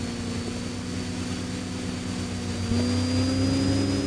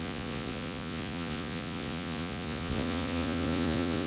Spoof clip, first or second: second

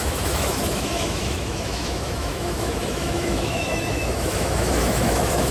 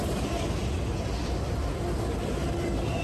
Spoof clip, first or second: first